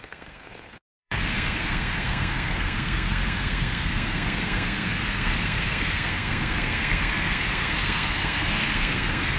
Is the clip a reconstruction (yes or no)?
yes